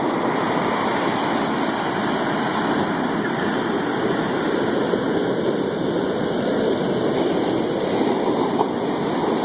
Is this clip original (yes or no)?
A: yes